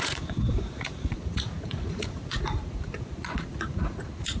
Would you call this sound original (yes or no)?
no